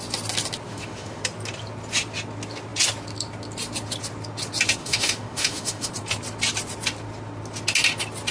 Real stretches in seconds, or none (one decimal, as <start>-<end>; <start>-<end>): 0.0-0.7; 1.2-4.8; 5.9-8.3